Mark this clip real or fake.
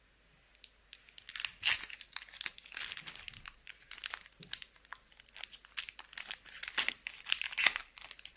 real